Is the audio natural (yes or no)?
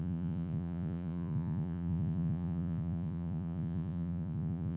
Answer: no